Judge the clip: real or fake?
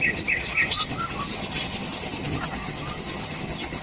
fake